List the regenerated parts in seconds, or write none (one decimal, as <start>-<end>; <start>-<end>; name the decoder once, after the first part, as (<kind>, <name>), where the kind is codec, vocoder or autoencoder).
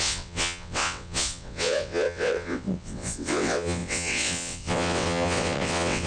0.0-6.1 (vocoder, WaveNeXt)